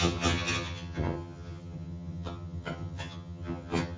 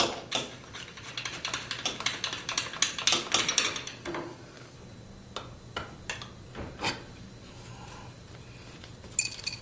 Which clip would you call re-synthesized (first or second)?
first